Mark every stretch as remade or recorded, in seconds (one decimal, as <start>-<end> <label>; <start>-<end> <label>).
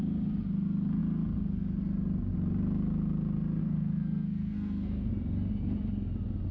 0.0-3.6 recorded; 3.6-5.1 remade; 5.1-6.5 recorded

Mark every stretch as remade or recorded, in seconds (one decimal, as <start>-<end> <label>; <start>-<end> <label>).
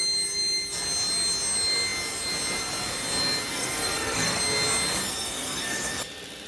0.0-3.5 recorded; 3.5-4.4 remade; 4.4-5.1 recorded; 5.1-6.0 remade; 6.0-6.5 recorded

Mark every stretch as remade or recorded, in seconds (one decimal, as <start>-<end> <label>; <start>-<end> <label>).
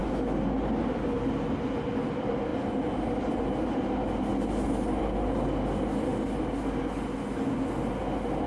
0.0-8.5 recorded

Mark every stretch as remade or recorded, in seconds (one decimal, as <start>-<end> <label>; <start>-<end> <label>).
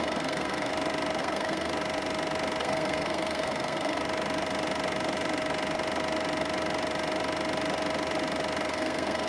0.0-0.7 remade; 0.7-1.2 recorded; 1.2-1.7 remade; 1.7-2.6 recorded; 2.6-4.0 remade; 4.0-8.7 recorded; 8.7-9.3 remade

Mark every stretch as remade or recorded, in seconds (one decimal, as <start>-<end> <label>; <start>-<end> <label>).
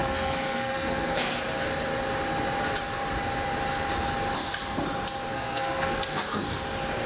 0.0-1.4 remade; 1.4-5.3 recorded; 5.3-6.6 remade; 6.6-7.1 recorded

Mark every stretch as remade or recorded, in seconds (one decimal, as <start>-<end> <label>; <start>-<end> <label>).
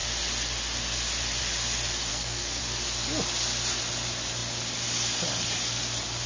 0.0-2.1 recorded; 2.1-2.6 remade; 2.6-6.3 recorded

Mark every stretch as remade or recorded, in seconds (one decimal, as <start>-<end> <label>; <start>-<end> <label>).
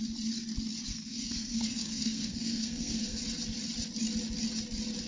0.0-0.9 recorded; 0.9-3.2 remade; 3.2-5.1 recorded